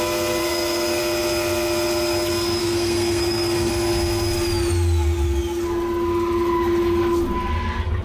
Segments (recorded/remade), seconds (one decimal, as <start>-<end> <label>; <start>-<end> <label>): 0.0-0.4 recorded; 0.4-1.0 remade; 1.0-2.6 recorded; 2.6-3.7 remade; 3.7-8.0 recorded